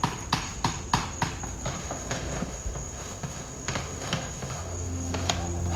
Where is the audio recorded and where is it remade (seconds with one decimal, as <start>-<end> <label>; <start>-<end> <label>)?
0.0-1.8 recorded; 1.8-5.3 remade; 5.3-5.8 recorded

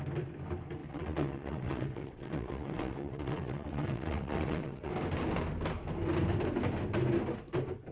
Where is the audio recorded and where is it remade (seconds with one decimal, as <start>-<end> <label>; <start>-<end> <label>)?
0.0-0.8 recorded; 0.8-4.9 remade; 4.9-7.9 recorded

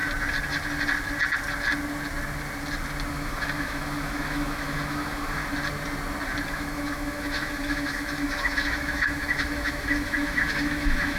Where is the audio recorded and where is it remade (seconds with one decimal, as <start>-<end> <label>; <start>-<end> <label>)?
0.0-3.1 recorded; 3.1-5.4 remade; 5.4-6.5 recorded; 6.5-11.2 remade

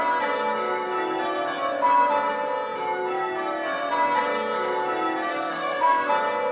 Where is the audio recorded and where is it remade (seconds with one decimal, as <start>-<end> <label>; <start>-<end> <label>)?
0.0-5.3 recorded; 5.3-6.1 remade; 6.1-6.5 recorded

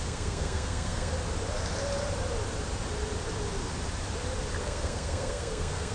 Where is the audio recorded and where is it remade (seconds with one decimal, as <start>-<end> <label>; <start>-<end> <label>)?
0.0-1.1 remade; 1.1-4.6 recorded; 4.6-5.9 remade

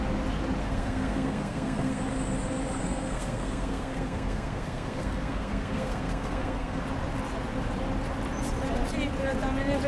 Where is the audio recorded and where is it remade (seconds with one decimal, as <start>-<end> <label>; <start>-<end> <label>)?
0.0-0.6 recorded; 0.6-2.0 remade; 2.0-2.8 recorded; 2.8-6.8 remade; 6.8-9.9 recorded